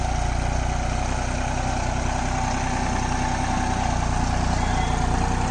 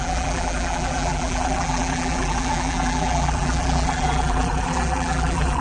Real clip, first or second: first